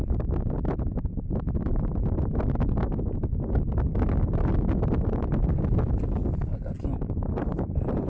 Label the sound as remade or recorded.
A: recorded